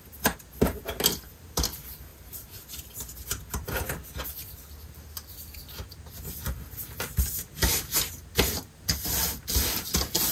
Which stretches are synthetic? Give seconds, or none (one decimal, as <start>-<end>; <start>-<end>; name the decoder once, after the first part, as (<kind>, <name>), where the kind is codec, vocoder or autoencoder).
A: 2.1-2.9 (vocoder, BigVGAN v2)